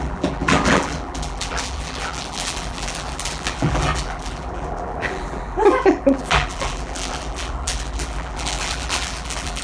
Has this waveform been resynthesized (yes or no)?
yes